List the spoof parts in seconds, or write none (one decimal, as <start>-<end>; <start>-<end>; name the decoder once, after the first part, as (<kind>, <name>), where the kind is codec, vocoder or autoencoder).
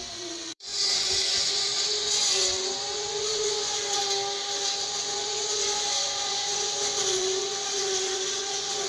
0.0-4.0 (vocoder, Vocos); 4.8-8.9